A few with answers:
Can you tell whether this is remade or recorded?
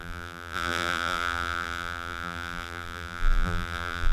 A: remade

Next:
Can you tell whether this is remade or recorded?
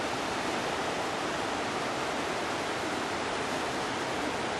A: recorded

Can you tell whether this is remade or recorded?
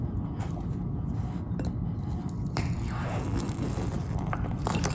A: recorded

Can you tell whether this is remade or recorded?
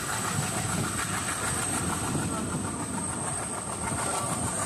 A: recorded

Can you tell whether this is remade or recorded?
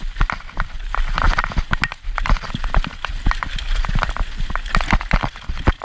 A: recorded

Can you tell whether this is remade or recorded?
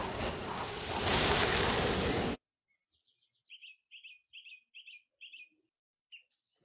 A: recorded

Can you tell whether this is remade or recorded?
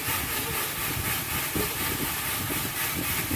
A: recorded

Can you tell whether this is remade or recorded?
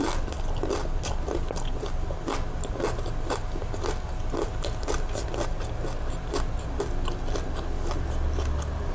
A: recorded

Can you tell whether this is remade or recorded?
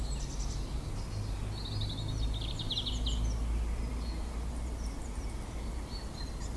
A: recorded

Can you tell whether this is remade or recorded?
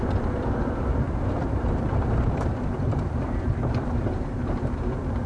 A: remade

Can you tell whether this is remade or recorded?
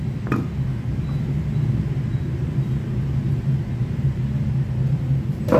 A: recorded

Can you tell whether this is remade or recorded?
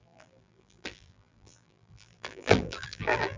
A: remade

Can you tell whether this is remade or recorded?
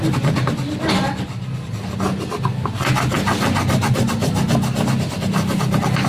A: recorded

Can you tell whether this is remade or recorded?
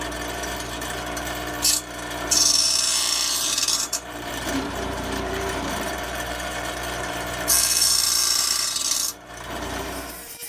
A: remade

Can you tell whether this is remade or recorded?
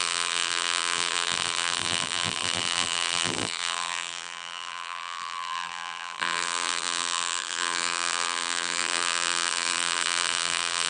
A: remade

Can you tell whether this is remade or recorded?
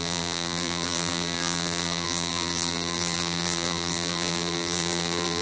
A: remade